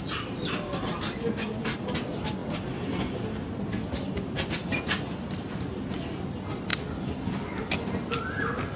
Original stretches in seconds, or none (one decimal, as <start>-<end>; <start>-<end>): 0.0-8.8